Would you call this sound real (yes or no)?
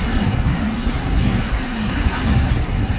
no